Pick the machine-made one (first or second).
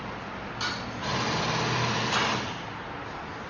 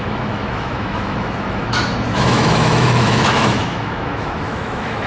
second